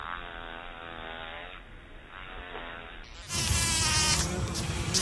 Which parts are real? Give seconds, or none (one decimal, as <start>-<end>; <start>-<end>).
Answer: 0.0-5.0